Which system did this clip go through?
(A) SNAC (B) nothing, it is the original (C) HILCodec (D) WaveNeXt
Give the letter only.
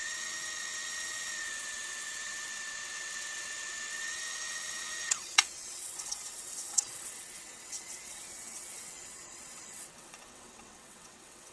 D